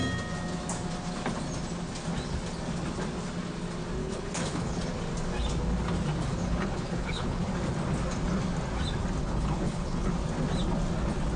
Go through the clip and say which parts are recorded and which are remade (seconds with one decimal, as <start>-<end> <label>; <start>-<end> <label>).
0.0-4.0 recorded; 4.0-4.8 remade; 4.8-6.3 recorded; 6.3-7.5 remade; 7.5-9.2 recorded; 9.2-10.1 remade; 10.1-11.4 recorded